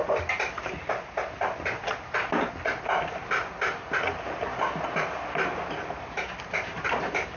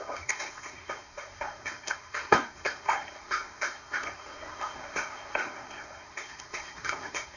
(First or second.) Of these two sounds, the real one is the first